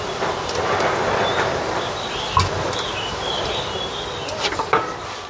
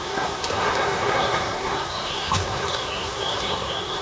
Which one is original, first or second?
first